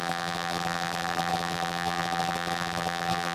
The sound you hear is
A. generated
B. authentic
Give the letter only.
A